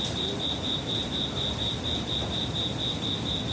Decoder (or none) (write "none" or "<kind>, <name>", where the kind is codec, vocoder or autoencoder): none